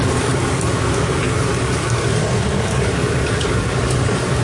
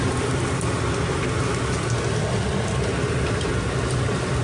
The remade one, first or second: first